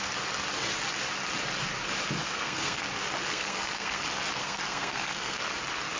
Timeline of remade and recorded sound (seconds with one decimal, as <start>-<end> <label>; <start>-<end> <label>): 0.0-2.2 recorded; 2.2-2.8 remade; 2.8-3.2 recorded; 3.2-4.0 remade; 4.0-4.4 recorded; 4.4-5.4 remade; 5.4-6.0 recorded